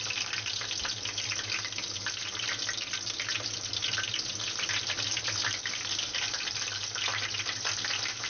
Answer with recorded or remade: recorded